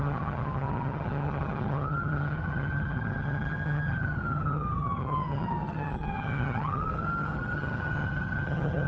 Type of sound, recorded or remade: remade